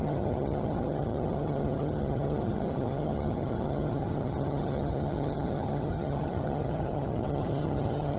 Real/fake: fake